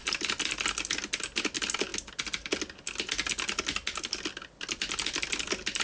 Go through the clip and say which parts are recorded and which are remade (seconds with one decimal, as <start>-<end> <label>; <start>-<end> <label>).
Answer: 0.0-5.8 recorded

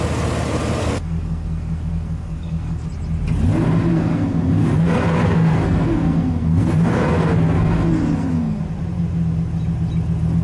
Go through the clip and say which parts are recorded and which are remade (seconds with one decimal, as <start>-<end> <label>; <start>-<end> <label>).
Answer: 0.0-0.8 recorded; 0.8-2.9 remade; 2.9-3.9 recorded; 3.9-8.6 remade; 8.6-10.4 recorded

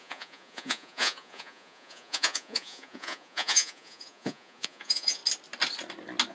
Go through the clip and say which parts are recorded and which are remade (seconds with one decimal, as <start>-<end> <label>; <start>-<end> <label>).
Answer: 0.0-5.2 remade; 5.2-6.3 recorded

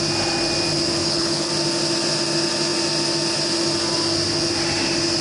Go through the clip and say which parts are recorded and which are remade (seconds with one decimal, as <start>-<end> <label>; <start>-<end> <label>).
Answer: 0.0-1.0 recorded; 1.0-1.5 remade; 1.5-5.2 recorded

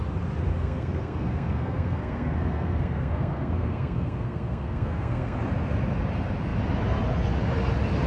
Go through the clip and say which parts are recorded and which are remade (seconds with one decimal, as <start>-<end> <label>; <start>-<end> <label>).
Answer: 0.0-0.5 recorded; 0.5-5.4 remade; 5.4-8.1 recorded

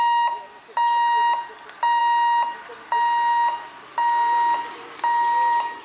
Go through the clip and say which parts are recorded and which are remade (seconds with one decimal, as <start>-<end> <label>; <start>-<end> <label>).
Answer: 0.0-5.8 recorded

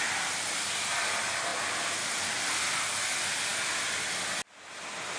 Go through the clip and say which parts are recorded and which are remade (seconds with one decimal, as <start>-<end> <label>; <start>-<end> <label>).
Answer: 0.0-5.2 recorded

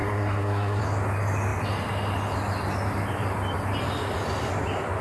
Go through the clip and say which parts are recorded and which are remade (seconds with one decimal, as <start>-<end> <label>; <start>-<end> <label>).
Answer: 0.0-0.8 remade; 0.8-5.0 recorded